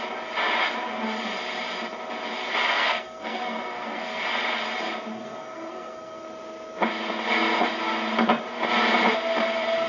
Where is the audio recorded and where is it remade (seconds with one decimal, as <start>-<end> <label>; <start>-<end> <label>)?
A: 0.0-2.7 recorded; 2.7-4.2 remade; 4.2-5.1 recorded; 5.1-6.2 remade; 6.2-9.9 recorded